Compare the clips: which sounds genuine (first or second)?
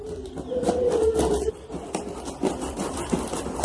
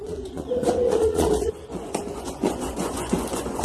first